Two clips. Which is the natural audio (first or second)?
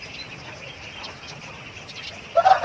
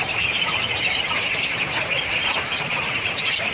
first